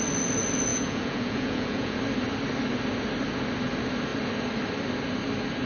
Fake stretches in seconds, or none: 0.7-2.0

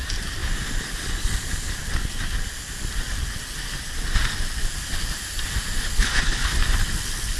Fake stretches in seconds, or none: 5.9-6.6

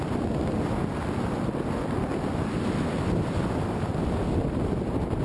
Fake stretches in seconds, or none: none